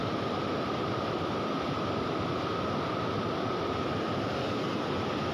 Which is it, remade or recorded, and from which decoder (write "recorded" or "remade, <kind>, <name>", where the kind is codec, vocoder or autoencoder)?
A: recorded